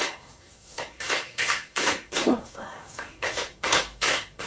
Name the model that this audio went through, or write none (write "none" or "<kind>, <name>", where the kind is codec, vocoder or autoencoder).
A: codec, SNAC